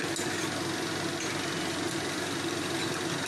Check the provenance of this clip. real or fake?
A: real